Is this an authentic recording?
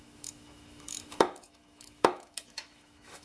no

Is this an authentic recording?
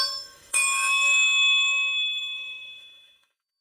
no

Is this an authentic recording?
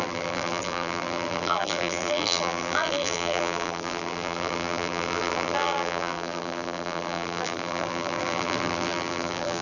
no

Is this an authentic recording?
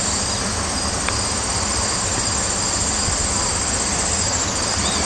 yes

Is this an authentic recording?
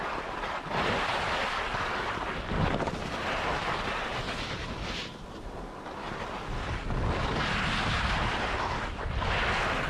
yes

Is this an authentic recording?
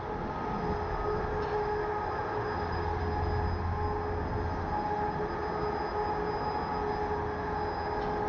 yes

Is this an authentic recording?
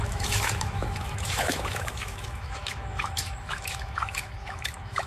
no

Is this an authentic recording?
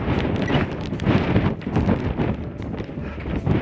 yes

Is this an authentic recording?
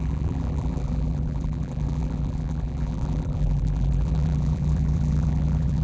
no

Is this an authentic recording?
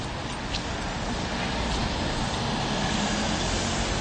yes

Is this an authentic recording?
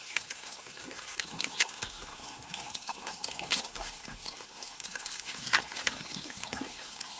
no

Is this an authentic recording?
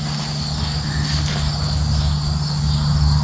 yes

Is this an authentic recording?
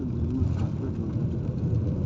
yes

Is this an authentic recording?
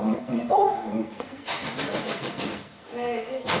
no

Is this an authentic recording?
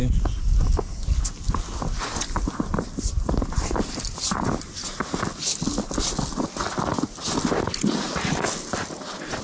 yes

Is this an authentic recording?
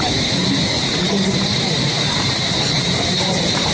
no